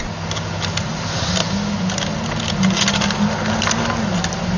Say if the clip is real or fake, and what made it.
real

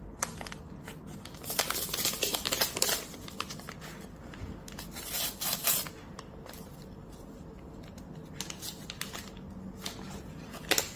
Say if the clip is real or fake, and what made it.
real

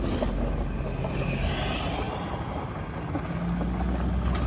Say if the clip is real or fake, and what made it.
real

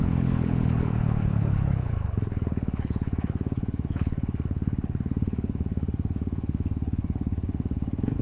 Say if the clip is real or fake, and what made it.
fake, codec, HILCodec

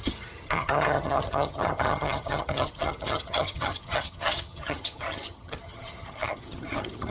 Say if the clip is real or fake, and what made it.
fake, vocoder, HiFi-GAN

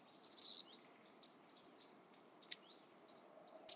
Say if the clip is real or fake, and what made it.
real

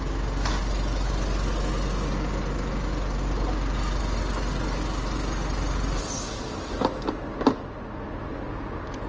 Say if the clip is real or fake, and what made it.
real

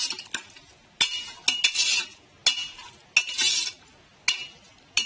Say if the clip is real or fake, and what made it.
real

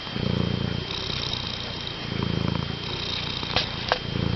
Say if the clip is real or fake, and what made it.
real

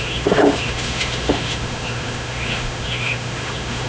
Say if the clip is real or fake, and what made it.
fake, autoencoder, DAC-VAE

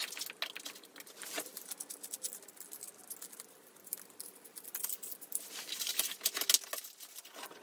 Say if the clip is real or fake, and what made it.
real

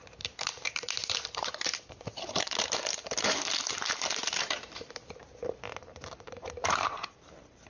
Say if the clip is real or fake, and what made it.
fake, vocoder, BigVGAN v2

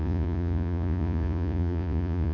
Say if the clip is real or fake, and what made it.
fake, vocoder, Vocos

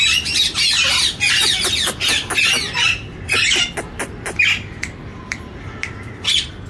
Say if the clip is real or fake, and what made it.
real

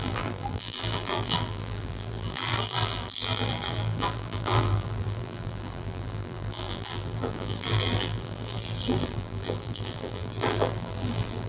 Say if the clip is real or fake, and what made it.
fake, vocoder, BigVGAN v2